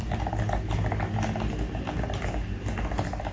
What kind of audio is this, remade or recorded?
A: recorded